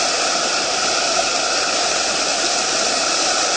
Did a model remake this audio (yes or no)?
yes